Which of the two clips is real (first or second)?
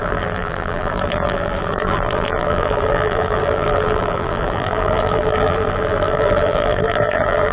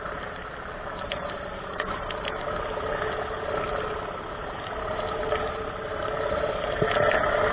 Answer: second